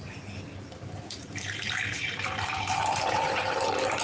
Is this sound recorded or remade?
remade